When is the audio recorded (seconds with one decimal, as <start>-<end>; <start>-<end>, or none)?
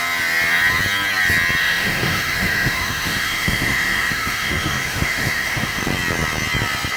0.0-1.6; 5.8-7.0